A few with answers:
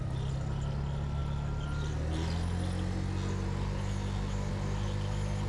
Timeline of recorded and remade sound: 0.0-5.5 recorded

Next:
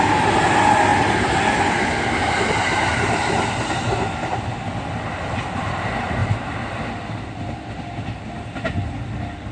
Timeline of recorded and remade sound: 0.0-9.5 recorded

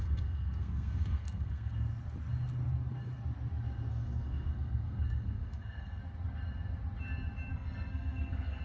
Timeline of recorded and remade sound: 0.0-1.7 remade; 1.7-3.9 recorded; 3.9-6.0 remade; 6.0-7.5 recorded; 7.5-8.6 remade

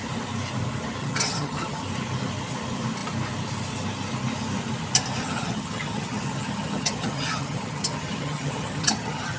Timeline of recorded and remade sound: 0.0-1.0 recorded; 1.0-1.8 remade; 1.8-5.2 recorded; 5.2-9.4 remade

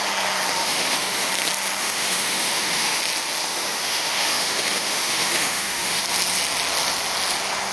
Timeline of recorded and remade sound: 0.0-0.6 recorded; 0.6-1.3 remade; 1.3-1.8 recorded; 1.8-3.0 remade; 3.0-3.5 recorded; 3.5-6.0 remade; 6.0-7.7 recorded